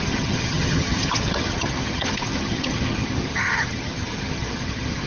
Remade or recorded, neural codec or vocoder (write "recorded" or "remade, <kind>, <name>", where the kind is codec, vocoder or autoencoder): remade, vocoder, HiFi-GAN